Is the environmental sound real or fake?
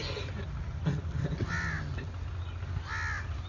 real